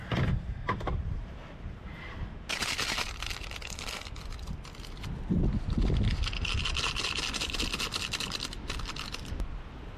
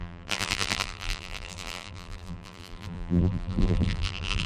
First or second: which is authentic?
first